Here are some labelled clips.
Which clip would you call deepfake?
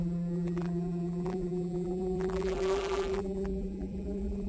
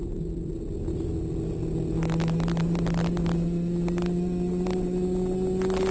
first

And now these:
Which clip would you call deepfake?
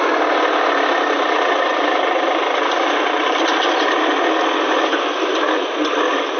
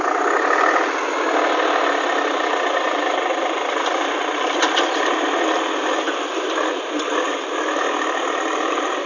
second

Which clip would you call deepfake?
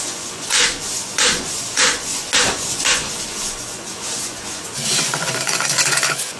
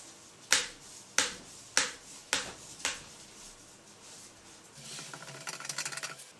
first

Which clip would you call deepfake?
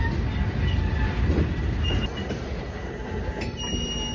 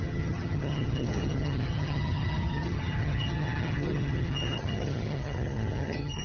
second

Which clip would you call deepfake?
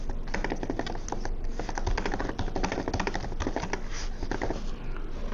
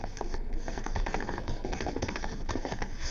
second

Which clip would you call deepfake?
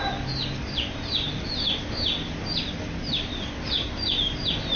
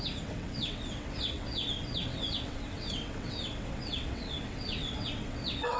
second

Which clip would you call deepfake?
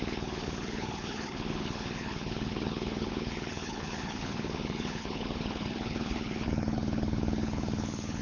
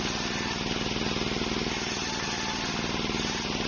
first